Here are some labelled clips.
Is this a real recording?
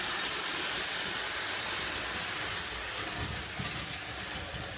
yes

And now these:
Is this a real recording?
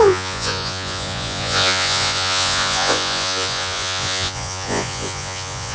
no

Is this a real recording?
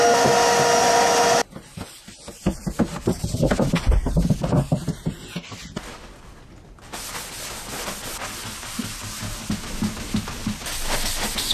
yes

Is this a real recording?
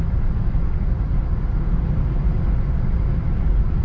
yes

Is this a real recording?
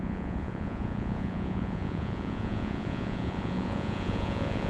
no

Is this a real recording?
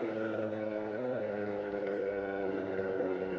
no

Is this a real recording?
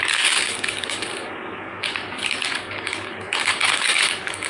no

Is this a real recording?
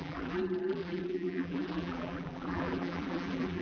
no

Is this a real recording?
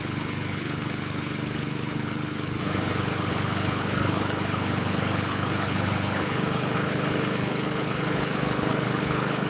no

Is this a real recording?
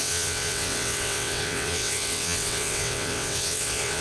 no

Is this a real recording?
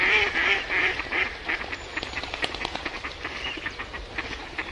no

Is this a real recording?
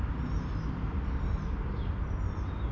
yes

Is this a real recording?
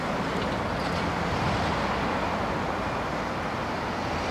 yes